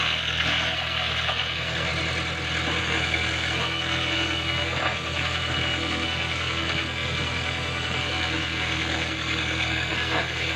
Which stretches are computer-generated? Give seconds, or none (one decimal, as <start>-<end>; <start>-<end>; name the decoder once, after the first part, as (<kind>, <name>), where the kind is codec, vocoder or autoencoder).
0.0-1.9 (codec, SNAC); 2.8-10.6